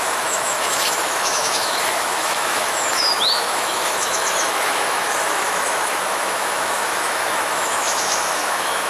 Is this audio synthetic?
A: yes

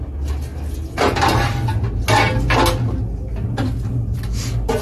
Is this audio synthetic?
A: no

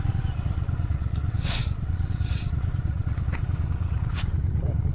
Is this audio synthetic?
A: yes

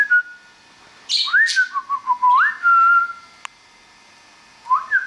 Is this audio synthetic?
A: no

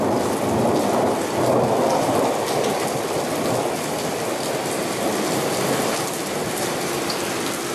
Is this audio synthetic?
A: no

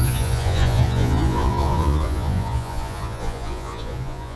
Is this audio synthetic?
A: yes